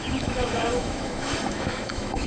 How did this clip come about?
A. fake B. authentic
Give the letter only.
A